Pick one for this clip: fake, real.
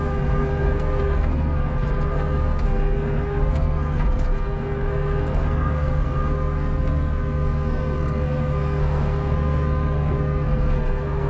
fake